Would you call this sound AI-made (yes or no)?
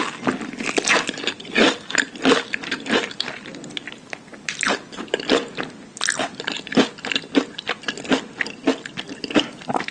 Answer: no